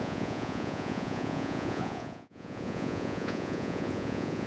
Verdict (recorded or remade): remade